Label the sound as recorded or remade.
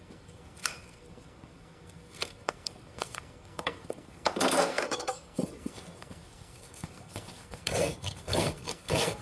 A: remade